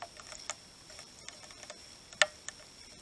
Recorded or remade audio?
recorded